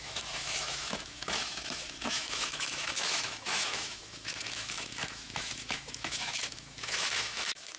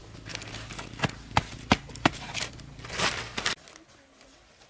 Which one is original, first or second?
second